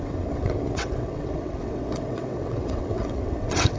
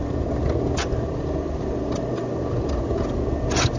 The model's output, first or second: first